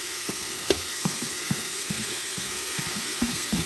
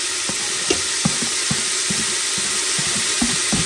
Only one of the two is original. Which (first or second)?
second